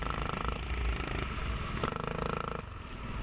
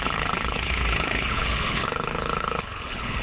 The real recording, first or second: first